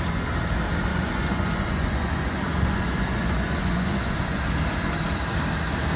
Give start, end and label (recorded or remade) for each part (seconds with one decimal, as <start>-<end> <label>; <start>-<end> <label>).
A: 0.0-0.9 recorded; 0.9-4.4 remade; 4.4-6.0 recorded